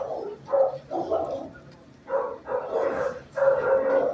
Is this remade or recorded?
recorded